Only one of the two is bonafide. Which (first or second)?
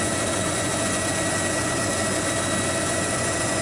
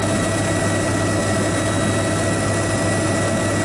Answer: second